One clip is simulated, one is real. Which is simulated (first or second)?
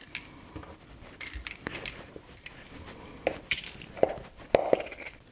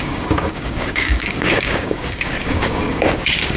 second